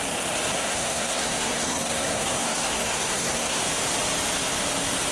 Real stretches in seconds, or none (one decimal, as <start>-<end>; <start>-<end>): 0.0-0.5; 3.6-5.1